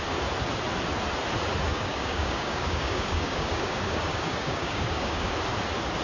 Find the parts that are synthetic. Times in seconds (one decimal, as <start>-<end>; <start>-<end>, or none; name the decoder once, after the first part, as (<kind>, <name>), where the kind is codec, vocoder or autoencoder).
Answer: 1.7-5.3 (codec, DAC)